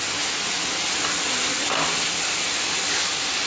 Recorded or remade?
recorded